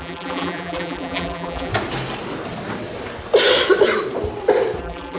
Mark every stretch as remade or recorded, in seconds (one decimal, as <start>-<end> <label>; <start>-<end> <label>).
0.0-1.7 remade; 1.7-4.8 recorded; 4.8-5.2 remade